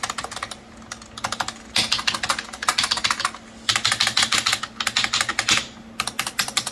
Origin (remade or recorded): recorded